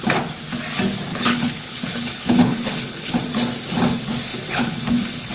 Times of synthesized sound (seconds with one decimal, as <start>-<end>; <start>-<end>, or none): 1.1-3.1; 4.3-5.3